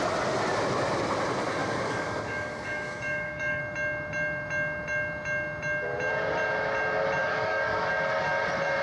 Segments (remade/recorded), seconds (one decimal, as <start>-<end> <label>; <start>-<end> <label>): 0.0-1.6 recorded; 1.6-3.6 remade; 3.6-7.2 recorded; 7.2-7.9 remade; 7.9-8.8 recorded